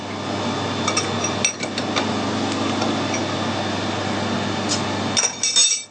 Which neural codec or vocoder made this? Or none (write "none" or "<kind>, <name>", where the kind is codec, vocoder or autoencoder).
none